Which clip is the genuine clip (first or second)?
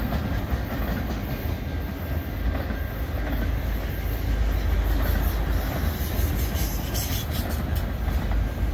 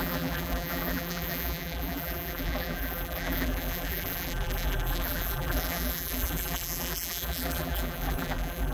first